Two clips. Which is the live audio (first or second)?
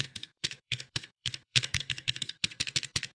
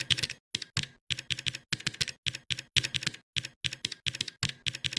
second